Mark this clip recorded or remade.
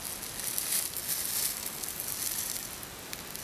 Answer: recorded